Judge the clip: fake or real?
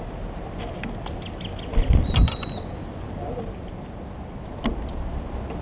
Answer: real